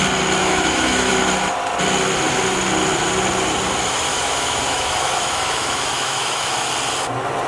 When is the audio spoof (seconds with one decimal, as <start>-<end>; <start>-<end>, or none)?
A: 0.4-1.1; 4.1-6.7